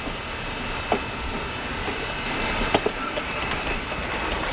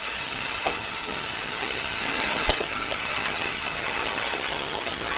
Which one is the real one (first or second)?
first